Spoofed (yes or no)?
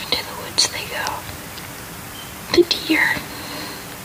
no